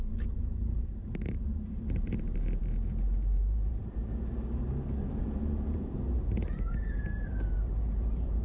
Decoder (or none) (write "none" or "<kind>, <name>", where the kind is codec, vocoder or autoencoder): vocoder, BigVGAN v2